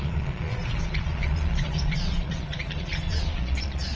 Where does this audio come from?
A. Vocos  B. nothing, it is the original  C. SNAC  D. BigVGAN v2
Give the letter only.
A